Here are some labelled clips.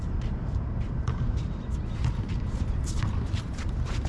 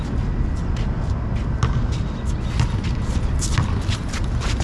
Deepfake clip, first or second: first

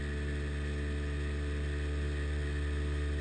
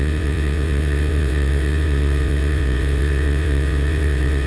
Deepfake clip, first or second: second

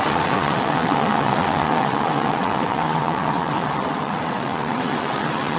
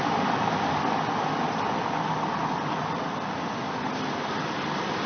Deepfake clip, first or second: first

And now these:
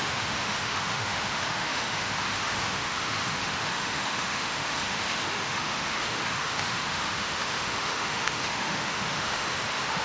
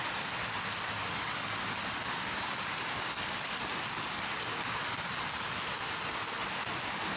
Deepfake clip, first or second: first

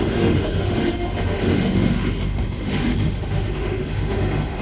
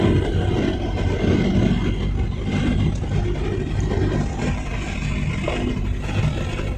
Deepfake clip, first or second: first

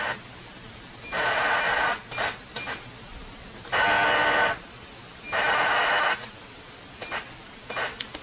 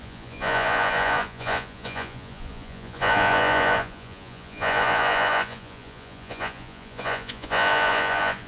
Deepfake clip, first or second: second